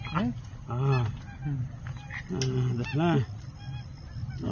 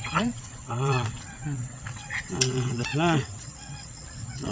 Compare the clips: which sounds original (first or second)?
first